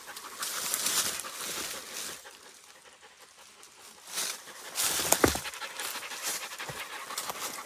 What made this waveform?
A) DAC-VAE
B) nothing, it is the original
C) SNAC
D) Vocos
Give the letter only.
B